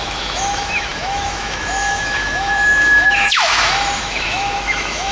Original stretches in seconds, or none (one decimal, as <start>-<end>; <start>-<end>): none

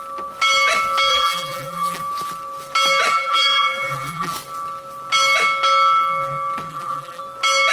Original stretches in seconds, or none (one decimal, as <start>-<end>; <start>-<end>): 0.0-1.1; 2.0-3.1; 4.3-6.7; 7.2-7.7

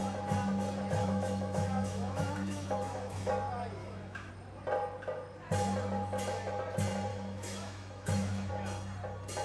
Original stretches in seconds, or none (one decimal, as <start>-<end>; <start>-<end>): 0.0-1.0; 3.3-3.8; 4.3-7.1; 8.5-9.4

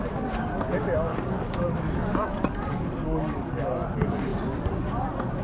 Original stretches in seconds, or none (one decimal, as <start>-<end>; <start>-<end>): 0.0-1.1; 3.7-5.4

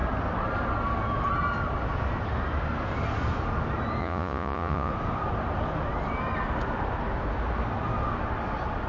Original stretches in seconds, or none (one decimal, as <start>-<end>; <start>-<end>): 0.0-4.0; 4.9-8.9